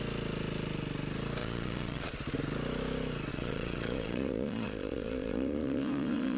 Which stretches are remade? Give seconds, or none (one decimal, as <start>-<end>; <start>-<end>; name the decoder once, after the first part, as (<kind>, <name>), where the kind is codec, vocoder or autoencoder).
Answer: 1.4-2.1 (vocoder, Vocos); 3.3-6.4